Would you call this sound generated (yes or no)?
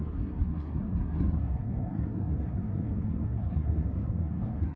yes